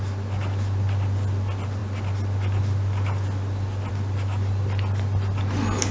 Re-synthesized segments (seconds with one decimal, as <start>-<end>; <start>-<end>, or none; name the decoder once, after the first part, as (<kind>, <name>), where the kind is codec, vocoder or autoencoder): none